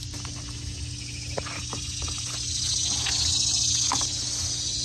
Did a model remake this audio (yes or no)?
no